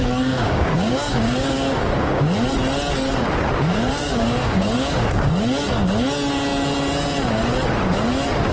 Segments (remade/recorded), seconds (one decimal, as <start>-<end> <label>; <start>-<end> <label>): 0.0-2.2 remade; 2.2-3.7 recorded; 3.7-5.3 remade; 5.3-8.5 recorded